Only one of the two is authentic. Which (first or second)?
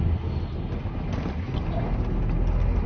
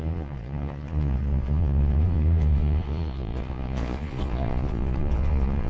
first